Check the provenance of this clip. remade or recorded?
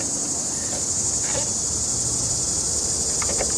recorded